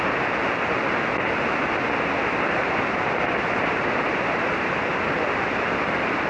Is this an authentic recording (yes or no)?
yes